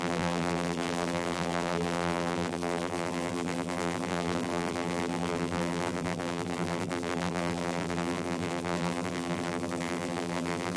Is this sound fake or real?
fake